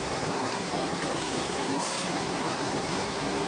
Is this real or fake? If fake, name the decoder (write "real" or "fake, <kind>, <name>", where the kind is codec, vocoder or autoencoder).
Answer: fake, codec, SNAC